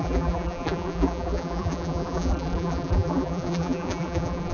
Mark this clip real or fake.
fake